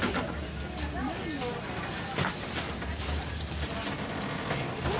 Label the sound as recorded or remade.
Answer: recorded